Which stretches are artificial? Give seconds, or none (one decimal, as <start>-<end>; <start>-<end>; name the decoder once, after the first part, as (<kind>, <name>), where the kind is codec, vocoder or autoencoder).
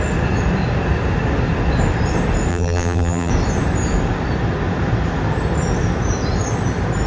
2.5-3.3 (vocoder, BigVGAN v2)